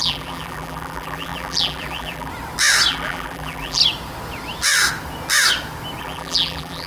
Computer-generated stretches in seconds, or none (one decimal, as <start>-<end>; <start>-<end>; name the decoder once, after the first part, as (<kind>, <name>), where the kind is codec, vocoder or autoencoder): 0.0-2.3 (vocoder, BigVGAN v2); 2.9-3.8; 6.0-6.9